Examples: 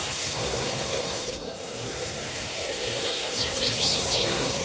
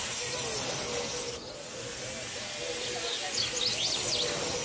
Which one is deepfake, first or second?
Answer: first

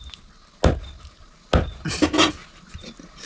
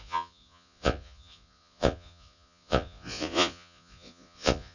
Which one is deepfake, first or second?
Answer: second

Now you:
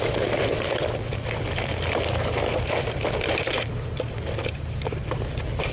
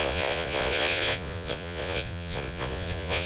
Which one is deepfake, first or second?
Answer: second